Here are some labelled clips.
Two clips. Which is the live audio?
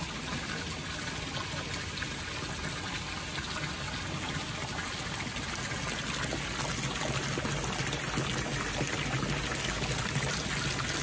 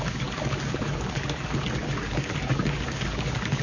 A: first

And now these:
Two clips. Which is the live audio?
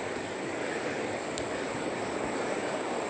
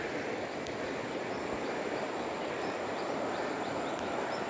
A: second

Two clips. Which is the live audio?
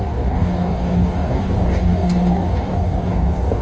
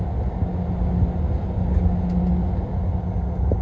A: second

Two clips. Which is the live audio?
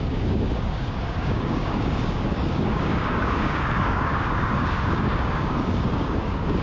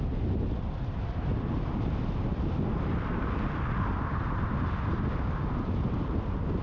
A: second